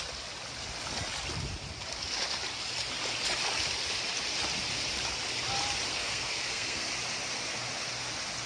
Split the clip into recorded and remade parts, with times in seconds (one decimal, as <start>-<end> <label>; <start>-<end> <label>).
0.0-5.9 recorded; 5.9-6.9 remade; 6.9-8.5 recorded